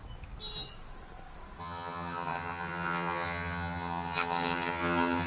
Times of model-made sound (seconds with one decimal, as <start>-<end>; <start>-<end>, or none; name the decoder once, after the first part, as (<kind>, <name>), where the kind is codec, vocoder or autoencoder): 1.6-5.3 (vocoder, HiFi-GAN)